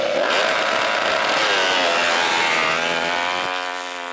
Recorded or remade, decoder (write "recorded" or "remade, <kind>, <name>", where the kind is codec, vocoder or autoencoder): recorded